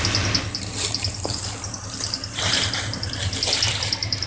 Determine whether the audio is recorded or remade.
recorded